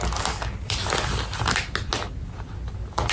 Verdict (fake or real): real